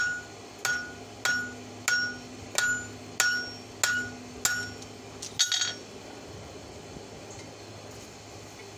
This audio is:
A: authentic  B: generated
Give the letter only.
A